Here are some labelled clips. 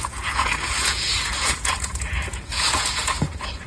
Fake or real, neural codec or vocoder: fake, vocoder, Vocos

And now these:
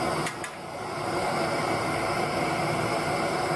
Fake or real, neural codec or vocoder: real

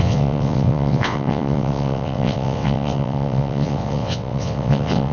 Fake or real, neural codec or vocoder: fake, vocoder, WaveNeXt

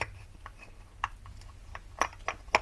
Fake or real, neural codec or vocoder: real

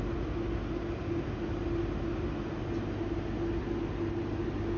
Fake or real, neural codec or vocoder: real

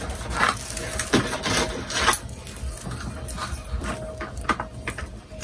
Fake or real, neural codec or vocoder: real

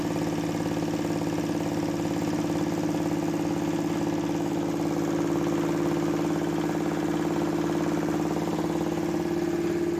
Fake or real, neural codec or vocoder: real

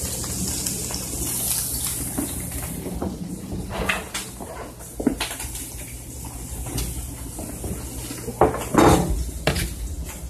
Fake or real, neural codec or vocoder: real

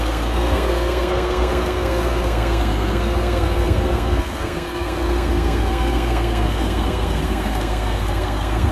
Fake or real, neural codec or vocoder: fake, codec, SNAC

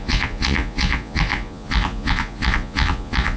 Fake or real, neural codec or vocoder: fake, vocoder, Vocos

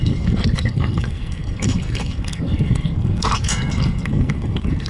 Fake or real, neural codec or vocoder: fake, codec, SNAC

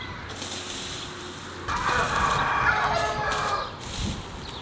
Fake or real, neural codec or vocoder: real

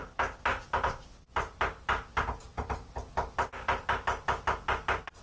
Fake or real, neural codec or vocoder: real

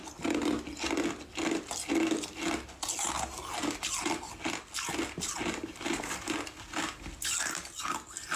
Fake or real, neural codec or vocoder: real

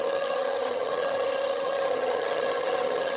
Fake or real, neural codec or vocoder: fake, vocoder, HiFi-GAN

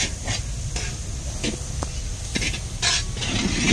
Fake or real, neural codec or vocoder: real